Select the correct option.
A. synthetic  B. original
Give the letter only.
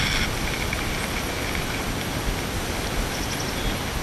B